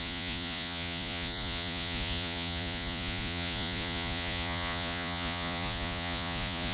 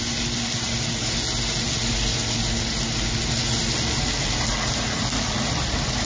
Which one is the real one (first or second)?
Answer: second